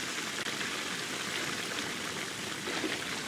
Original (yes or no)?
yes